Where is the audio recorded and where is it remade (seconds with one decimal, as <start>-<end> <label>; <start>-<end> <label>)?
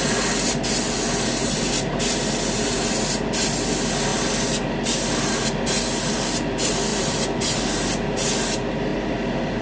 0.0-1.4 recorded; 1.4-2.0 remade; 2.0-6.9 recorded; 6.9-7.6 remade; 7.6-9.6 recorded